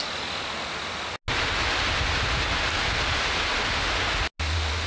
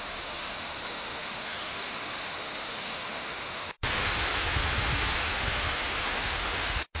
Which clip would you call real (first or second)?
first